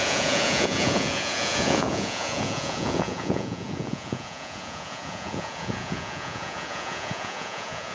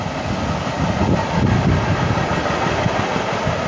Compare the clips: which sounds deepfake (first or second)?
first